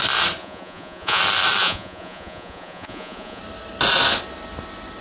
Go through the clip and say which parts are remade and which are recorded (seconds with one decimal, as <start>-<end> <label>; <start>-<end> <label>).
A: 0.0-0.4 recorded; 0.4-1.2 remade; 1.2-1.6 recorded; 1.6-3.4 remade; 3.4-5.0 recorded